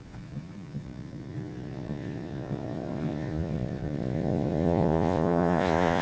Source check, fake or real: fake